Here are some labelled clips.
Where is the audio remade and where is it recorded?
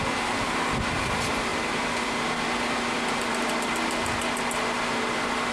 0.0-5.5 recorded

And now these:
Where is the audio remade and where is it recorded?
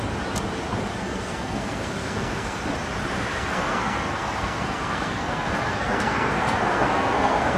0.0-0.9 recorded; 0.9-2.6 remade; 2.6-3.3 recorded; 3.3-7.6 remade